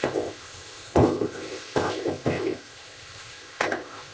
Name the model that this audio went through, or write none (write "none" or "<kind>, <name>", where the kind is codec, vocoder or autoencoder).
codec, ZipCodec